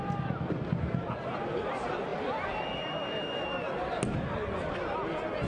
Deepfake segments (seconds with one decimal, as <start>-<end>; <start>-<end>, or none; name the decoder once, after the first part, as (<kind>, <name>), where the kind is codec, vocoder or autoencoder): none